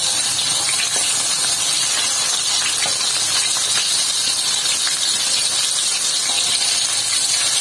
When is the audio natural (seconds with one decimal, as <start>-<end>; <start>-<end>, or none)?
1.6-7.6